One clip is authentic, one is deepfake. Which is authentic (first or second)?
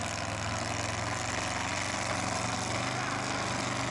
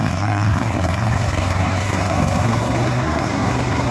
first